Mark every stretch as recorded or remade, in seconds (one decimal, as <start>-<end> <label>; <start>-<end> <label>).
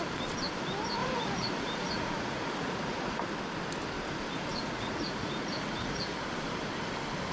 0.0-1.0 recorded; 1.0-3.2 remade; 3.2-4.5 recorded; 4.5-6.2 remade; 6.2-7.3 recorded